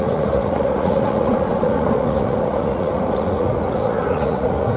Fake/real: fake